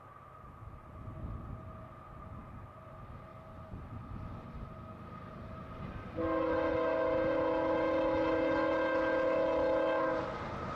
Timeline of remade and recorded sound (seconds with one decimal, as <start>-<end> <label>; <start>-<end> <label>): 0.0-10.8 recorded

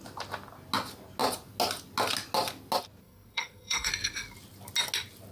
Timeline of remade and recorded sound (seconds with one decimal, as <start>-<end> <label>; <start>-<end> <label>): 0.0-3.0 recorded; 3.0-3.9 remade; 3.9-5.3 recorded

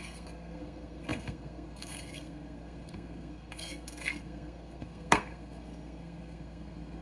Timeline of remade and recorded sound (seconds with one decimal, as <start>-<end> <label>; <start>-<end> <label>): 0.0-7.0 remade

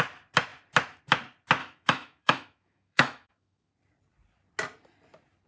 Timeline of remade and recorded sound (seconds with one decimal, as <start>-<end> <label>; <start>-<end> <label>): 0.0-1.6 recorded; 1.6-3.7 remade; 3.7-5.5 recorded